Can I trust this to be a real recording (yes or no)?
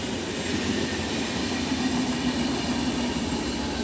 yes